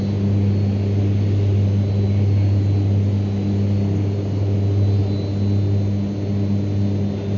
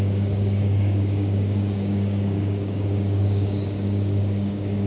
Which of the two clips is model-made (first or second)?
second